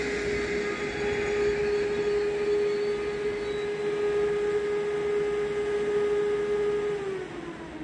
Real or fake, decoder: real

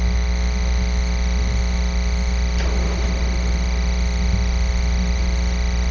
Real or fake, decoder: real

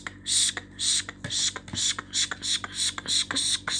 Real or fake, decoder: real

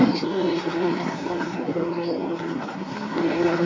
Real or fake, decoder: fake, codec, SNAC